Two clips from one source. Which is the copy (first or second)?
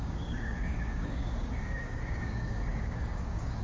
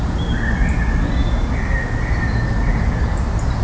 first